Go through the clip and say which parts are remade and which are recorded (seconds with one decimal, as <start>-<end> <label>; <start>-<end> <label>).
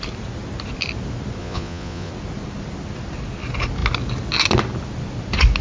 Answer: 0.0-1.4 recorded; 1.4-2.1 remade; 2.1-5.6 recorded